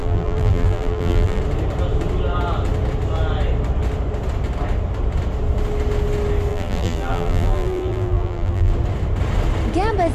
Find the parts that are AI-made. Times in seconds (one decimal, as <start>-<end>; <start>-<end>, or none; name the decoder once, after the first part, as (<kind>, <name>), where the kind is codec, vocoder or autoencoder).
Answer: 0.0-1.4 (vocoder, BigVGAN v2); 6.5-8.7